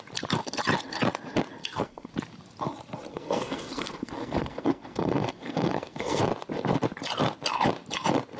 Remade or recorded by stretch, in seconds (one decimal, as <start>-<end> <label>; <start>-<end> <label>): 0.0-1.6 recorded; 1.6-2.1 remade; 2.1-3.1 recorded; 3.1-6.2 remade; 6.2-8.4 recorded